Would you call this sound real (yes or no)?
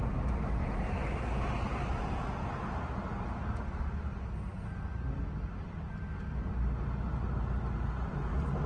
yes